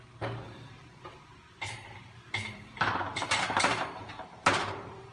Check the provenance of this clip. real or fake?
fake